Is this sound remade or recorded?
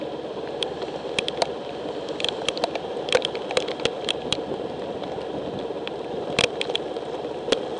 recorded